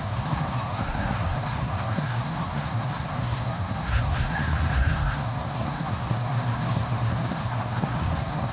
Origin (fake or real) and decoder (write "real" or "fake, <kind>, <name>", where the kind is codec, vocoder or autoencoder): fake, codec, SNAC